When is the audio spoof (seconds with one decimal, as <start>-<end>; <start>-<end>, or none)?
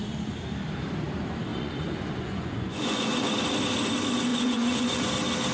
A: 1.5-3.3; 4.3-5.1